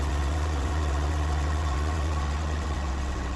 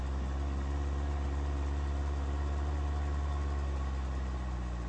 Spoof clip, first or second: first